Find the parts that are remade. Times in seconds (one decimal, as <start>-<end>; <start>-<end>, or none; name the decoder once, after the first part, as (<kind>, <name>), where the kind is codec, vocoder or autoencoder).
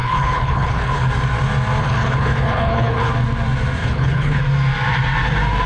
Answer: 0.0-1.1 (codec, HILCodec); 1.8-3.1; 3.8-4.4